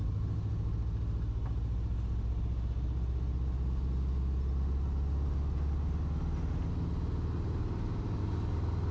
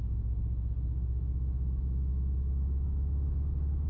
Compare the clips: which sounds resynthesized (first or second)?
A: second